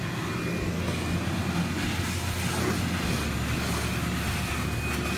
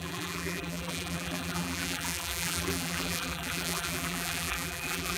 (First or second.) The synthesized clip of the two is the second